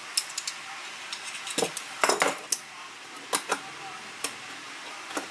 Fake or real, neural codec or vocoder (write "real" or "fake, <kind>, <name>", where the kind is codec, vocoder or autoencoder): real